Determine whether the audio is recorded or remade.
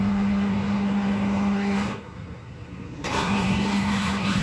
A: remade